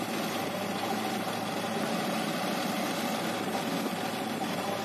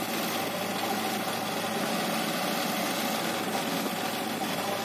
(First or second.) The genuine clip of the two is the second